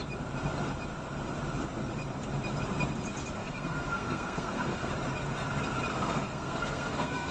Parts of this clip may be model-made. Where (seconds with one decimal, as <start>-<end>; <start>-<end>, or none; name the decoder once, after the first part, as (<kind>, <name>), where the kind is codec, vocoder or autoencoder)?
3.4-4.9 (codec, SNAC); 5.9-7.3